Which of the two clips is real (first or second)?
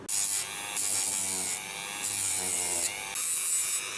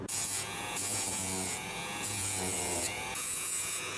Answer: first